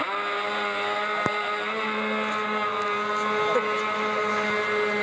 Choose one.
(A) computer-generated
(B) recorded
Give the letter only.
B